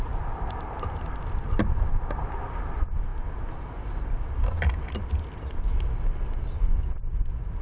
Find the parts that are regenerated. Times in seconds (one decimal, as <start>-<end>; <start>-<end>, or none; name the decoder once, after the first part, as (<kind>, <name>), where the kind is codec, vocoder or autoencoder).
none